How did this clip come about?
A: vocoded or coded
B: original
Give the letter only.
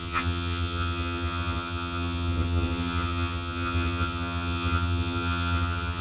A